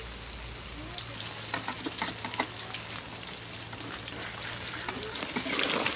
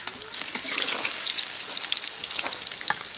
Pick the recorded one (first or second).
first